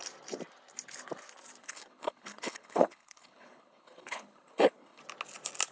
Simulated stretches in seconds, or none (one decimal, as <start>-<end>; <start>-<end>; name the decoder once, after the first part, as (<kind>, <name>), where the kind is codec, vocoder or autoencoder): 1.6-5.0 (codec, HILCodec)